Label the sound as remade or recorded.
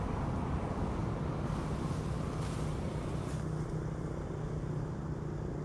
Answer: recorded